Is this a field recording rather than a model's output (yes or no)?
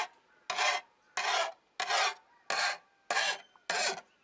yes